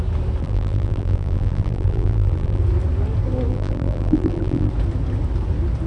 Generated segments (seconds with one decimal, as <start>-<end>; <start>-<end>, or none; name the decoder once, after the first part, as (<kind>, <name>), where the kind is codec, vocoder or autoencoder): 0.4-2.6 (vocoder, BigVGAN v2); 3.5-4.7